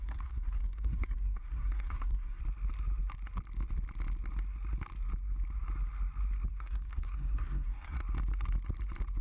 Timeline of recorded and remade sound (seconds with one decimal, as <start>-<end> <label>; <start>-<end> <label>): 0.0-2.4 remade; 2.4-6.5 recorded; 6.5-8.0 remade; 8.0-9.2 recorded